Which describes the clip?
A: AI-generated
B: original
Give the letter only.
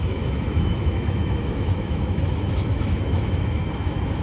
A